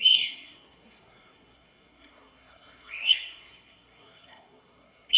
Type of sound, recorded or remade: remade